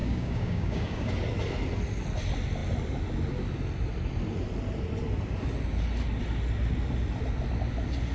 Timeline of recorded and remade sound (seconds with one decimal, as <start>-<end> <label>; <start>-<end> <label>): 0.0-1.1 remade; 1.1-8.1 recorded

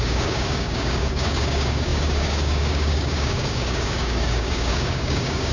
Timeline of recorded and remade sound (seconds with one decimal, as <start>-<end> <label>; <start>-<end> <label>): 0.0-5.5 remade

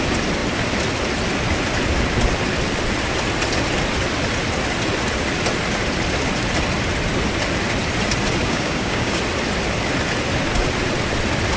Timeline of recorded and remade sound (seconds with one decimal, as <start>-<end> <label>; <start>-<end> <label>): 0.0-8.4 recorded; 8.4-9.2 remade; 9.2-11.6 recorded

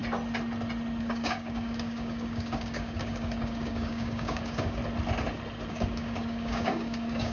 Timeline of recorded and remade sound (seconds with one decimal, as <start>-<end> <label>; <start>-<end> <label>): 0.0-1.0 recorded; 1.0-4.8 remade; 4.8-5.7 recorded; 5.7-7.3 remade

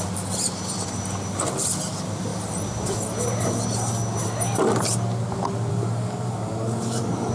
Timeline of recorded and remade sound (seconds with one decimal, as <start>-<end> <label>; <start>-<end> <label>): 0.0-5.7 recorded; 5.7-7.3 remade

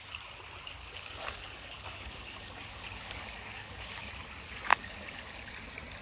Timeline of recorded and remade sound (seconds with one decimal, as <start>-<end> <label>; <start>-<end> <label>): 0.0-0.8 recorded; 0.8-4.1 remade; 4.1-4.7 recorded; 4.7-5.5 remade; 5.5-6.0 recorded